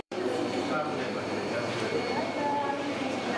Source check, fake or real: fake